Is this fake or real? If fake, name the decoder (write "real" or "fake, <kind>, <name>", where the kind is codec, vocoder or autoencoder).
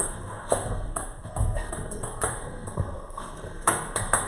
fake, codec, SNAC